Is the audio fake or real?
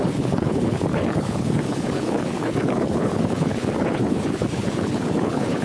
fake